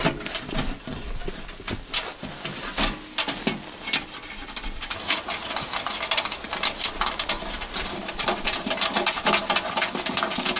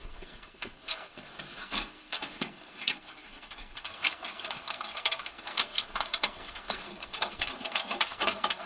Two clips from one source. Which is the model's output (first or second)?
second